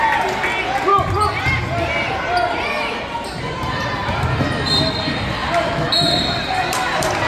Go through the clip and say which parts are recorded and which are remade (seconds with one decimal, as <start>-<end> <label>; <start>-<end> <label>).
0.0-7.3 recorded